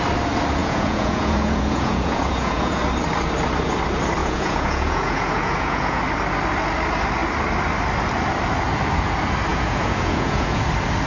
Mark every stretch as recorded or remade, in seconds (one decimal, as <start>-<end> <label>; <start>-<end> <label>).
0.0-0.6 recorded; 0.6-2.8 remade; 2.8-4.2 recorded; 4.2-6.0 remade; 6.0-9.5 recorded; 9.5-10.6 remade; 10.6-11.1 recorded